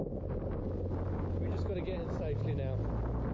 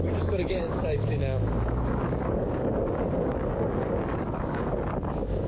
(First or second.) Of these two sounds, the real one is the first